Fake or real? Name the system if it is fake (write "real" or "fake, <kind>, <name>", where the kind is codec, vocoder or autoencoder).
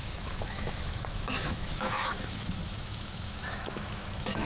fake, autoencoder, DAC-VAE